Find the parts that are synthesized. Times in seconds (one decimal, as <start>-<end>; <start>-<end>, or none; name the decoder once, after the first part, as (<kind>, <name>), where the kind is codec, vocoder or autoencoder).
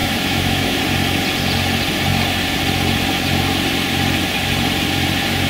0.0-0.8 (autoencoder, DAC-VAE)